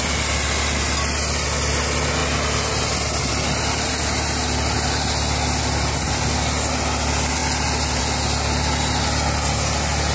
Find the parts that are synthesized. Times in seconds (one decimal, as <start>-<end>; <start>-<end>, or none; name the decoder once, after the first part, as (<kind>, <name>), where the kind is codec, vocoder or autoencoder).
none